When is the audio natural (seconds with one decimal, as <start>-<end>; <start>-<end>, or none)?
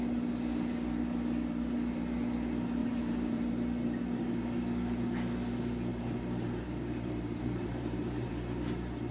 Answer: 0.0-2.8; 3.5-5.9; 8.3-9.1